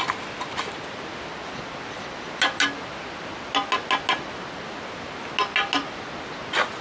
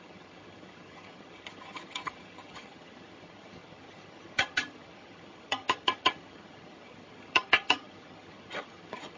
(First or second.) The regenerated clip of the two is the second